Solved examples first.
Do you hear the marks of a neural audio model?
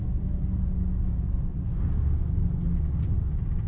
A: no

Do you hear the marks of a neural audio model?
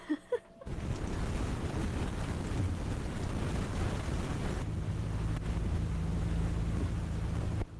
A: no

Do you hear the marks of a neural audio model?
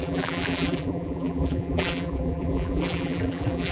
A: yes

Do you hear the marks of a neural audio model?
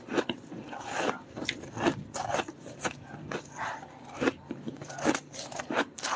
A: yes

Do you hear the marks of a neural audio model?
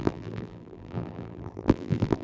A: yes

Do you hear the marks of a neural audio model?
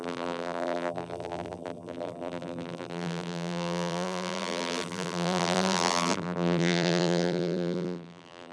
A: yes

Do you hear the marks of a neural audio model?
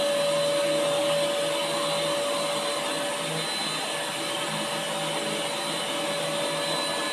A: no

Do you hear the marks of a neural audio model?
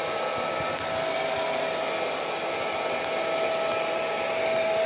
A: no